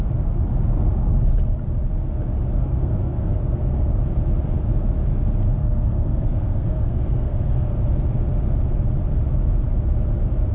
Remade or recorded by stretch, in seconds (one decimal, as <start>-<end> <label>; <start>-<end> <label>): 0.0-2.6 recorded; 2.6-3.9 remade; 3.9-5.6 recorded; 5.6-7.7 remade; 7.7-10.5 recorded